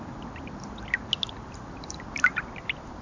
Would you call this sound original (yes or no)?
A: yes